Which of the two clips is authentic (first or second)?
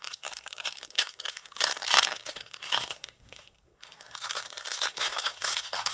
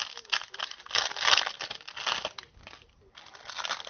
second